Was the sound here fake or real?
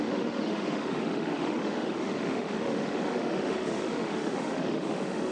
fake